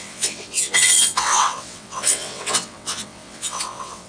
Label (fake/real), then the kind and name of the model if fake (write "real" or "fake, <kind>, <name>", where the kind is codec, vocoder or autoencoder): fake, vocoder, WaveNeXt